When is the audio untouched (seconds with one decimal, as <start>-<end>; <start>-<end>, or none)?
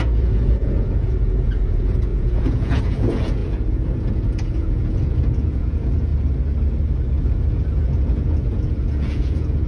6.1-7.3